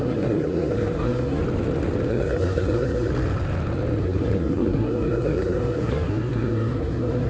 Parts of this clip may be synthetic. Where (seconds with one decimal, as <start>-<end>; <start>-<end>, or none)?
0.0-1.4; 2.1-3.1; 4.0-7.3